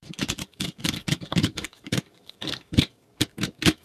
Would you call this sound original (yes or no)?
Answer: no